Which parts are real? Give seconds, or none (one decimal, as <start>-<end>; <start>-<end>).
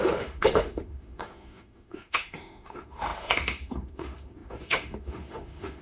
none